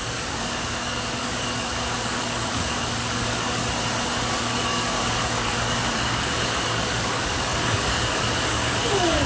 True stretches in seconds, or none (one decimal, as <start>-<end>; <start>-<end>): 3.6-4.3